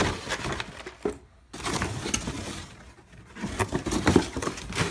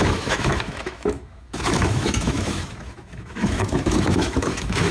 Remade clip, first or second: second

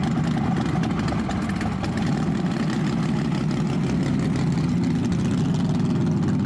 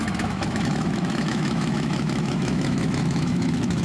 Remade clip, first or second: second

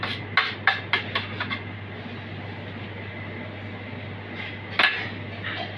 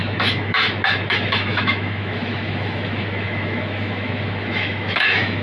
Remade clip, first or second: second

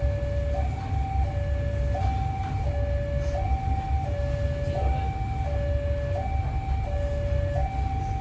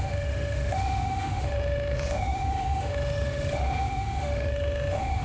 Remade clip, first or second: second